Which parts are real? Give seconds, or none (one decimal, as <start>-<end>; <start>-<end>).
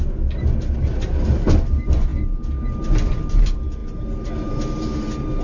0.0-5.4